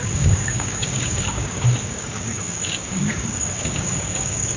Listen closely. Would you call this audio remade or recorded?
remade